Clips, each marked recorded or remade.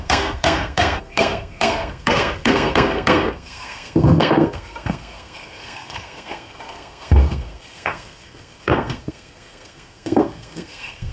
remade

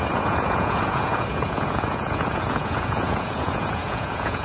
remade